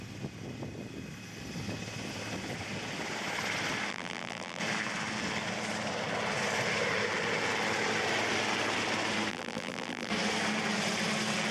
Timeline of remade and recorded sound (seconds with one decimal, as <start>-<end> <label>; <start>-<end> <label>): 0.0-3.9 recorded; 3.9-4.6 remade; 4.6-9.3 recorded; 9.3-10.1 remade; 10.1-11.5 recorded